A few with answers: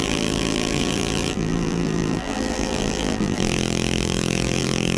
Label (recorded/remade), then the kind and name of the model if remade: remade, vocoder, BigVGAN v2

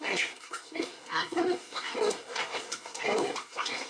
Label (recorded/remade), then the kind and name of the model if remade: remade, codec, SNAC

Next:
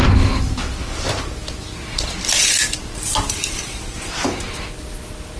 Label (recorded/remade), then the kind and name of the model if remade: recorded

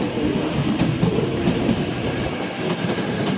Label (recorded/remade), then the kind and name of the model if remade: recorded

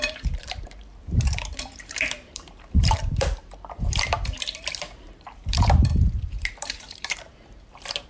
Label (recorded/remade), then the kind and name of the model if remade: remade, vocoder, BigVGAN v2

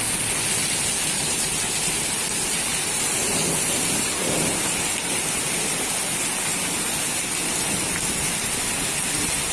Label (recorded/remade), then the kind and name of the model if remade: recorded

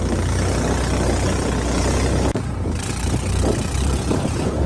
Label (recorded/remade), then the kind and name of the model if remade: recorded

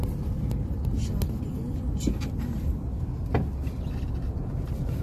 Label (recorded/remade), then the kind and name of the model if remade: recorded